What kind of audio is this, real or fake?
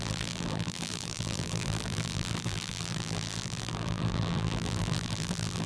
fake